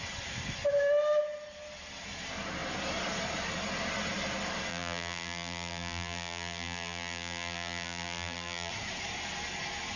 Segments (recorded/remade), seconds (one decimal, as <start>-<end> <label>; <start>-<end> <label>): 0.0-4.7 recorded; 4.7-8.7 remade; 8.7-10.0 recorded